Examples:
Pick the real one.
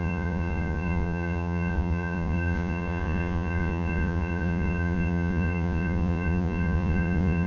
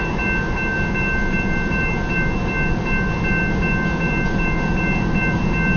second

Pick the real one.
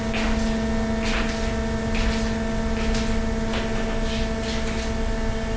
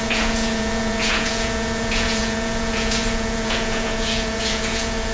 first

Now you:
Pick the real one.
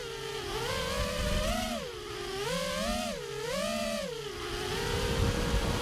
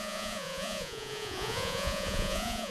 first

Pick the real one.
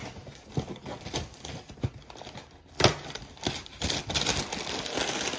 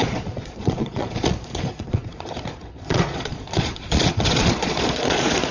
first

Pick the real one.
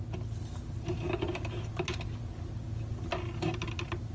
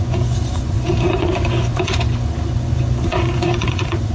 first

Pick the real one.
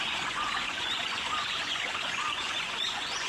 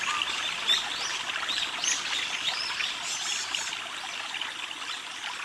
second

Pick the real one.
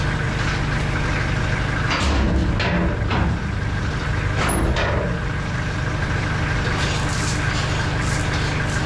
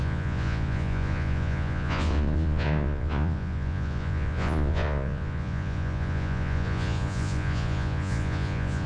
first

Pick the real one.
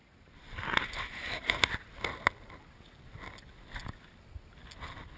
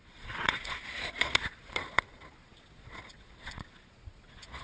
first